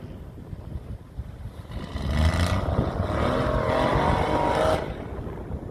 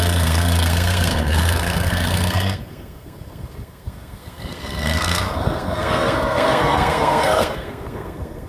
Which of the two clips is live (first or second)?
first